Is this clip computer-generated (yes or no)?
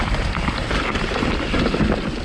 no